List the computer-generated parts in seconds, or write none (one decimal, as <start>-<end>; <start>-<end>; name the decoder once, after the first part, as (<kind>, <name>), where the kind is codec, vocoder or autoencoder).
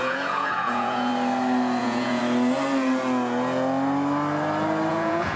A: 0.0-1.1 (vocoder, Vocos); 1.8-2.2; 4.9-5.4